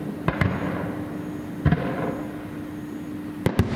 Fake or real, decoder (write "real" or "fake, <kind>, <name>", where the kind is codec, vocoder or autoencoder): real